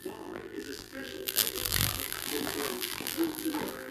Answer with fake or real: fake